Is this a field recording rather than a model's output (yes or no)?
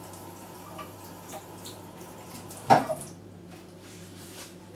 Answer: no